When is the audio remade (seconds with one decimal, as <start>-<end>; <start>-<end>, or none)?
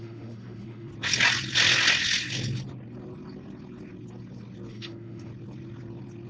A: 0.0-0.9; 4.7-5.3